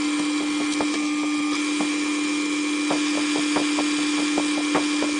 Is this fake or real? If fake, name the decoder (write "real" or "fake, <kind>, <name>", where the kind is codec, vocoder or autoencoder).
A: real